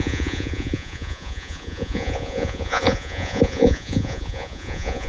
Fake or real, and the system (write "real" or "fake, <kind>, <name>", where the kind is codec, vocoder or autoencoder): fake, vocoder, Vocos